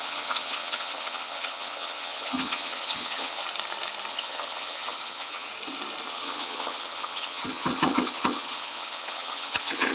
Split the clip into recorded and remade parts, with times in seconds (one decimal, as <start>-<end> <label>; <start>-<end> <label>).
0.0-3.4 remade; 3.4-4.1 recorded; 4.1-5.5 remade; 5.5-6.1 recorded; 6.1-9.9 remade